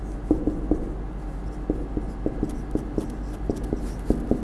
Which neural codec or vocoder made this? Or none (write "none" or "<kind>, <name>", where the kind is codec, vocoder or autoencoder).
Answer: none